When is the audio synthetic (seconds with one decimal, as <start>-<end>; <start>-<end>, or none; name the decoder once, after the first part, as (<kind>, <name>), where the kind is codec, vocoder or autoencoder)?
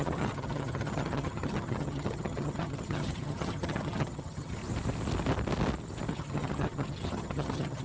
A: 0.0-4.6 (vocoder, HiFi-GAN); 6.1-7.8